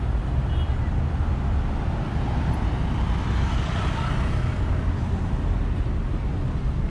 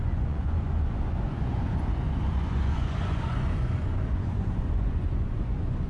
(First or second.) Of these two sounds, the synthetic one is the second